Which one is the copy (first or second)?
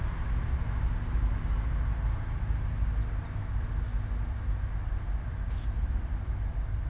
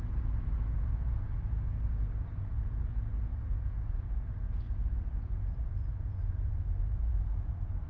second